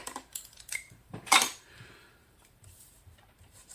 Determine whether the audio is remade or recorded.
remade